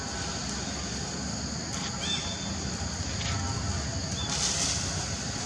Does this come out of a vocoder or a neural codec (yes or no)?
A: no